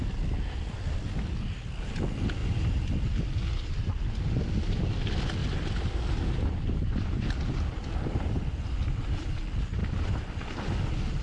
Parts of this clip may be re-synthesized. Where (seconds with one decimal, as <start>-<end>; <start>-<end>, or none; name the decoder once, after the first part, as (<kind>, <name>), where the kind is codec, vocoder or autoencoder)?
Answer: 2.4-3.9 (vocoder, BigVGAN v2); 5.4-9.0